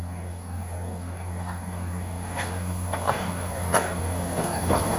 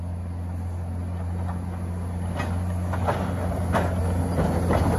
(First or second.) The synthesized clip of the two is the first